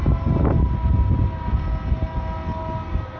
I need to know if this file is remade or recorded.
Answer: recorded